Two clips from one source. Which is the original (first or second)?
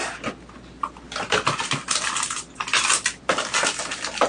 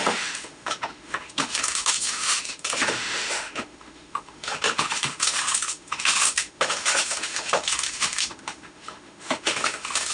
first